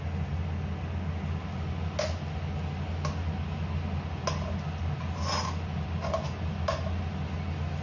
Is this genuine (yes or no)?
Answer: yes